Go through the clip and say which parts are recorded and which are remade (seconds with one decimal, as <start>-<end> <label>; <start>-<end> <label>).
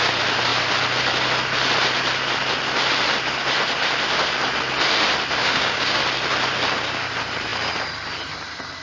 0.0-5.4 recorded; 5.4-6.0 remade; 6.0-8.8 recorded